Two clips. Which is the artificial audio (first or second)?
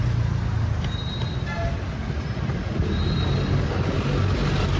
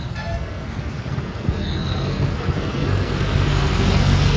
second